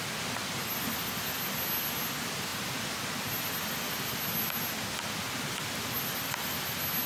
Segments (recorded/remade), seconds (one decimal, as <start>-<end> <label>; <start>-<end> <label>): 0.0-7.1 recorded